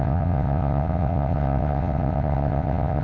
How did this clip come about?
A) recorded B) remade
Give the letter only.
B